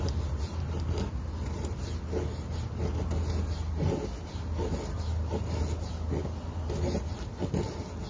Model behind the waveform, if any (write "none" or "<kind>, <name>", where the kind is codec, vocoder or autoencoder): none